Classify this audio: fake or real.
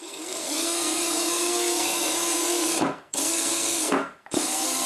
fake